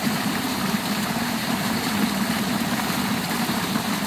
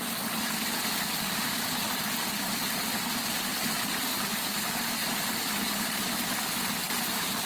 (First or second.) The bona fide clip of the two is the second